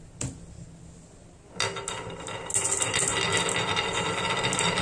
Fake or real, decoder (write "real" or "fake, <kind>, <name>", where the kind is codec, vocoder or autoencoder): real